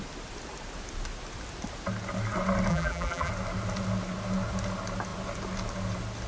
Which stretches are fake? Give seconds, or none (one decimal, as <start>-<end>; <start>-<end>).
2.7-3.3